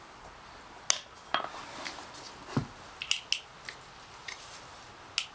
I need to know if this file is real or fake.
real